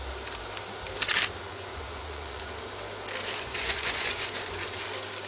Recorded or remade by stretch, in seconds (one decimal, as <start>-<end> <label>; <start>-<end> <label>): 0.0-1.5 recorded; 1.5-2.5 remade; 2.5-3.2 recorded; 3.2-4.8 remade; 4.8-5.3 recorded